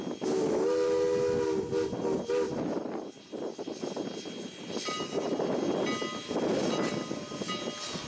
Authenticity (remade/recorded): recorded